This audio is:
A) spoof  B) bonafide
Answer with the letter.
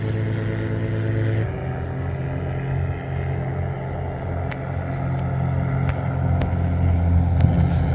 B